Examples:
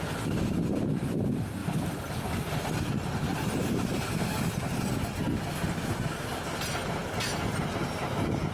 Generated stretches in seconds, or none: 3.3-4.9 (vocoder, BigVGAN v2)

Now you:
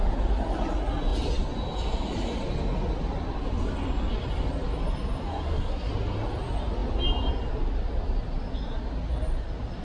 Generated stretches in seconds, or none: 5.3-5.9 (codec, SNAC)